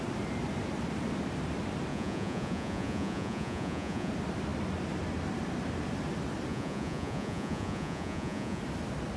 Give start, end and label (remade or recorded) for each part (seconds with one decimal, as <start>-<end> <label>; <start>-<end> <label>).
0.0-1.9 recorded; 1.9-4.1 remade; 4.1-6.5 recorded; 6.5-8.6 remade; 8.6-9.2 recorded